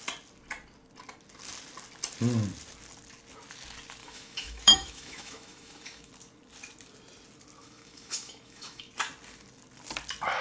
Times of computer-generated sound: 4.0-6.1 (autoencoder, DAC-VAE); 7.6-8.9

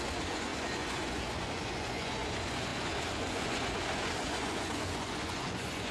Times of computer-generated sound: 0.0-5.9 (vocoder, Vocos)

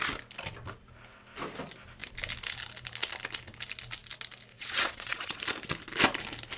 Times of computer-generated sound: 4.5-5.4 (vocoder, WaveNeXt)

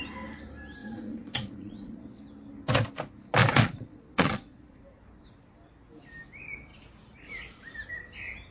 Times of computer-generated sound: 0.8-2.2 (vocoder, Vocos); 3.4-4.8

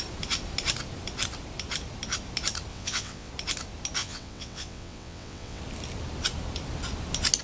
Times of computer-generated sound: 2.7-3.3 (vocoder, WaveNeXt); 4.0-5.6

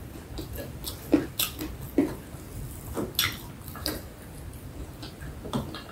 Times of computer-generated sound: none

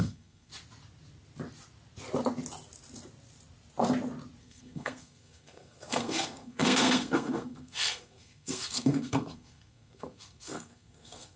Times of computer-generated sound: 0.0-0.5 (codec, SNAC); 4.4-11.4